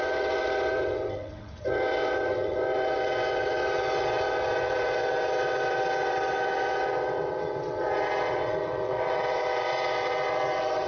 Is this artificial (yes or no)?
yes